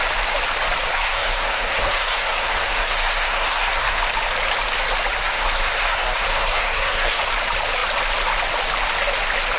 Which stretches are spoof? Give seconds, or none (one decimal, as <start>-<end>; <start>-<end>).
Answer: 0.9-4.0; 5.2-7.3